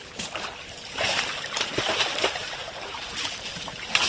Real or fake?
fake